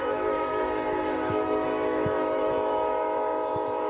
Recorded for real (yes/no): no